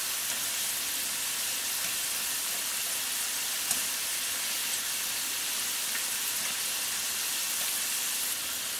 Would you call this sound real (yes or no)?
yes